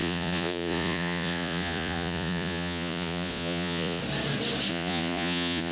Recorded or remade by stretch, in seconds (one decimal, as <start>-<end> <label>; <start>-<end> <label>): 0.0-4.0 remade; 4.0-4.7 recorded; 4.7-5.7 remade